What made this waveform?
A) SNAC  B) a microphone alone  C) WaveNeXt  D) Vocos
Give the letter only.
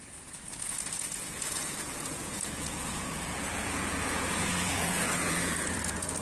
D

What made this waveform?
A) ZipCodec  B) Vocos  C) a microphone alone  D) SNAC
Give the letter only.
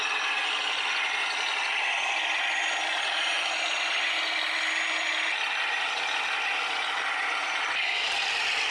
C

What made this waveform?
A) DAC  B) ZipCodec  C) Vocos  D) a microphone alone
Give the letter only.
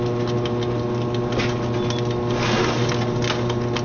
D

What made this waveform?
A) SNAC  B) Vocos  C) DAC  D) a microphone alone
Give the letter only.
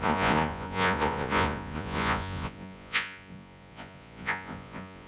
B